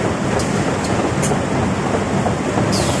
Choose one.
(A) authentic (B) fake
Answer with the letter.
A